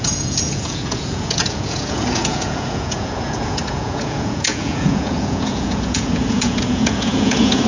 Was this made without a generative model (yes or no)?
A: no